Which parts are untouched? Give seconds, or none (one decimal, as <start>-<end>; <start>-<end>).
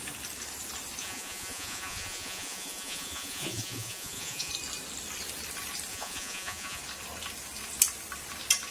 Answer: 0.0-1.0; 4.5-5.9; 6.8-8.7